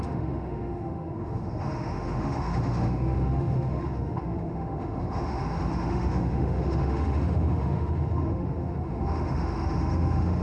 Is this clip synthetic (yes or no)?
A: yes